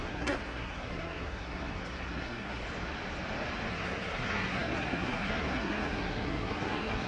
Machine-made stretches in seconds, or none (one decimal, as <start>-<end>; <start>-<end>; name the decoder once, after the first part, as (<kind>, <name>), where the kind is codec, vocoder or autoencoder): 0.0-2.6 (codec, SNAC); 3.7-7.1